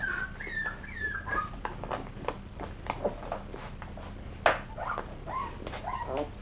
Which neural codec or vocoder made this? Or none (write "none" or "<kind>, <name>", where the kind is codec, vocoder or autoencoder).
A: none